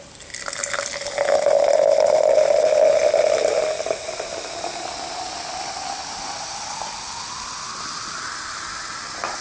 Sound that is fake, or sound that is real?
real